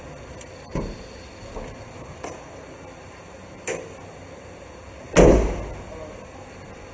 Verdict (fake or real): real